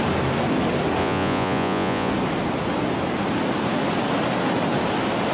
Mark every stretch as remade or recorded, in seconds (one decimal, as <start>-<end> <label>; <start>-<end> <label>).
0.0-1.0 recorded; 1.0-2.1 remade; 2.1-5.3 recorded